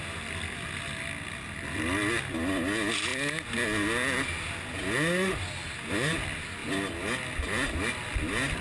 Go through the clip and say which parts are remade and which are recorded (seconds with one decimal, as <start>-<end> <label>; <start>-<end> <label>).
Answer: 0.0-8.6 recorded